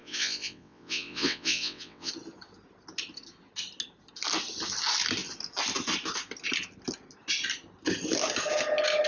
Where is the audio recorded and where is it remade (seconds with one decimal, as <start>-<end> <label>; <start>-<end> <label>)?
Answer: 0.0-2.1 remade; 2.1-9.1 recorded

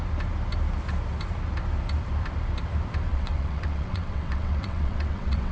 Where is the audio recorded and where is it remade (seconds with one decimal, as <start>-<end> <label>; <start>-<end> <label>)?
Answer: 0.0-3.1 recorded; 3.1-5.5 remade

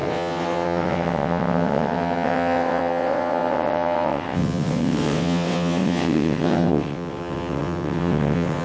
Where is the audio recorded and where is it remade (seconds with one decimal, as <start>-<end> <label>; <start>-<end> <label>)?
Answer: 0.0-8.6 remade

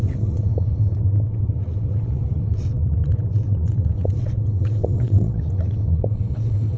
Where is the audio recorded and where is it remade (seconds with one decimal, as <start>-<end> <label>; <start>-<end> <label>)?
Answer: 0.0-6.8 remade

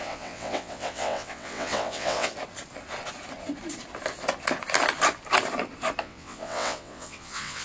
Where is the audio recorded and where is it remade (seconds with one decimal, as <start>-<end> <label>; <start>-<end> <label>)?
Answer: 0.0-2.3 remade; 2.3-6.0 recorded; 6.0-7.6 remade

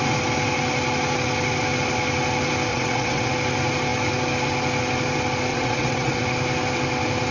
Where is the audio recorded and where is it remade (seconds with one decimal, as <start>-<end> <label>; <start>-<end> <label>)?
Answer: 0.0-2.7 recorded; 2.7-3.3 remade; 3.3-5.5 recorded; 5.5-6.2 remade; 6.2-7.3 recorded

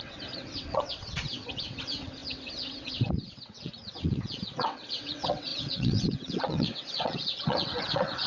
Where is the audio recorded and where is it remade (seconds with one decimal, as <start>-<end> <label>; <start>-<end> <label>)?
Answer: 0.0-8.3 remade